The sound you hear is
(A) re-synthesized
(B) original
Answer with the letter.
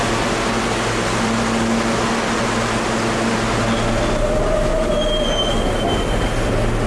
B